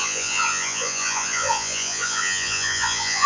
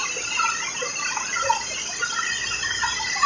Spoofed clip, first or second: first